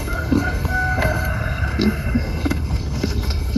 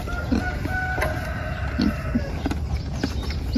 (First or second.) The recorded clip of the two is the second